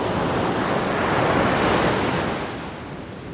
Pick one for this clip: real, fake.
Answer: real